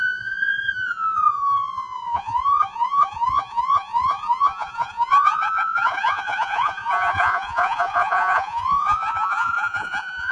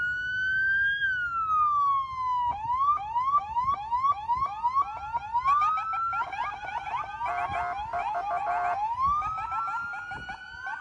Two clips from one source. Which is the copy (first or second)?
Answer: first